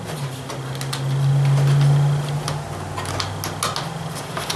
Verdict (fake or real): real